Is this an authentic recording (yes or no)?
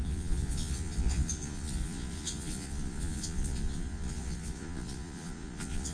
no